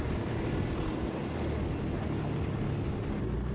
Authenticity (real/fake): real